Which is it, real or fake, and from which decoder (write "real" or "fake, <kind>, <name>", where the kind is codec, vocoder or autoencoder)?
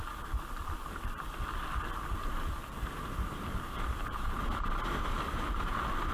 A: fake, vocoder, BigVGAN v2